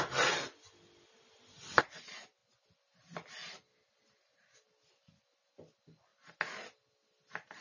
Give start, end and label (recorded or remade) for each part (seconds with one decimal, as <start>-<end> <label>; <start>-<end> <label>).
0.0-7.6 recorded